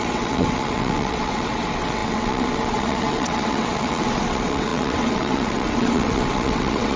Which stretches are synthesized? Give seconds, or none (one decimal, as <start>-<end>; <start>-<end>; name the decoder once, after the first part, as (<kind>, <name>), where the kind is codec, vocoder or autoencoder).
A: 0.0-7.0 (vocoder, WaveNeXt)